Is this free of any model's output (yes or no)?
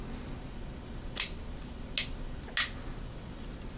yes